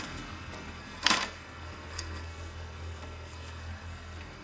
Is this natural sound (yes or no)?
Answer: no